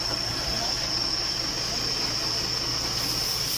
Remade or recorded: recorded